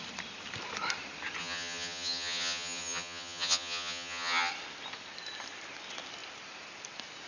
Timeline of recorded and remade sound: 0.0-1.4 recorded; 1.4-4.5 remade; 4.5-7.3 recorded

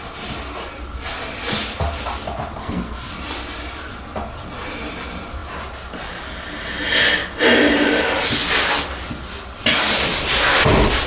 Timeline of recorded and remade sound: 0.0-2.6 recorded; 2.6-3.1 remade; 3.1-11.1 recorded

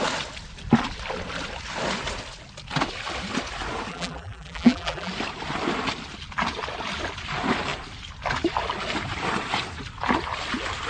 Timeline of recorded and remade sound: 0.0-3.9 recorded; 3.9-5.1 remade; 5.1-10.9 recorded

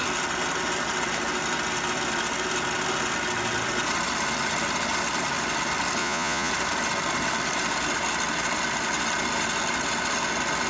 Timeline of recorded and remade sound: 0.0-6.0 recorded; 6.0-6.5 remade; 6.5-10.7 recorded